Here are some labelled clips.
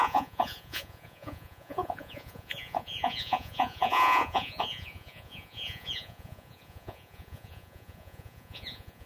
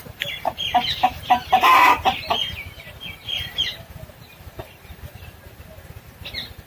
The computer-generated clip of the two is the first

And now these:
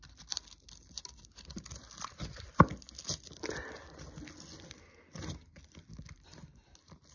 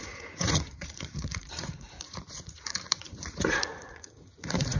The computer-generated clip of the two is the second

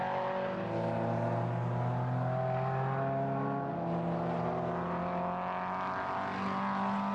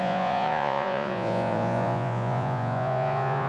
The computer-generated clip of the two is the second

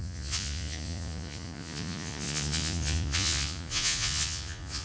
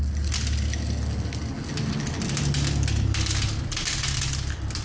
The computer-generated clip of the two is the first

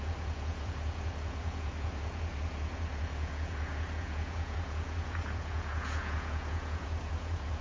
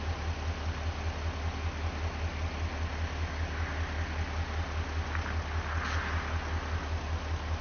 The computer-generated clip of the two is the first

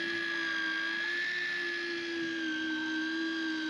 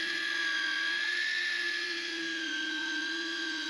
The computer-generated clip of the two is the second